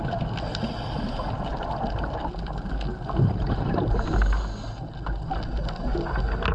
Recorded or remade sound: recorded